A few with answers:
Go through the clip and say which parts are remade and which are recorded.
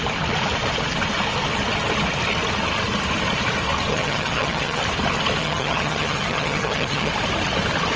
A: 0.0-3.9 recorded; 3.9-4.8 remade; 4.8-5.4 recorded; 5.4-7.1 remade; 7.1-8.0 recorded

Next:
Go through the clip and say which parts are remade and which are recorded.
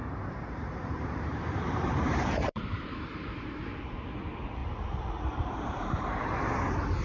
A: 0.0-3.6 remade; 3.6-4.6 recorded; 4.6-6.2 remade; 6.2-7.0 recorded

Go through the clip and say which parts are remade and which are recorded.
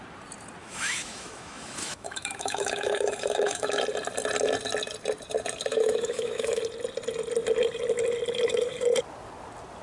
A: 0.0-0.6 recorded; 0.6-3.8 remade; 3.8-5.7 recorded; 5.7-6.6 remade; 6.6-9.8 recorded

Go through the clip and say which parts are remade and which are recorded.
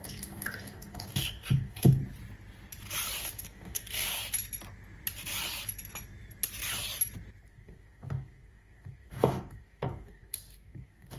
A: 0.0-2.0 remade; 2.0-3.2 recorded; 3.2-4.2 remade; 4.2-7.5 recorded; 7.5-11.2 remade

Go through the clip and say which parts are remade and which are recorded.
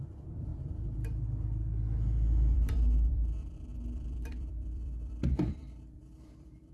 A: 0.0-6.7 remade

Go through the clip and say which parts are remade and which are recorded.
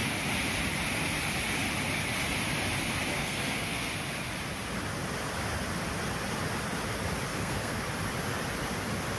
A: 0.0-3.1 recorded; 3.1-3.9 remade; 3.9-7.3 recorded; 7.3-7.8 remade; 7.8-9.2 recorded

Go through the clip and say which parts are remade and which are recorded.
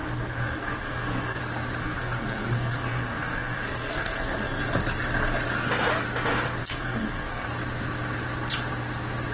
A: 0.0-1.4 remade; 1.4-1.8 recorded; 1.8-4.6 remade; 4.6-6.6 recorded; 6.6-7.5 remade; 7.5-9.3 recorded